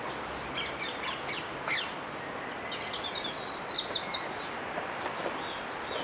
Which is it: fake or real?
real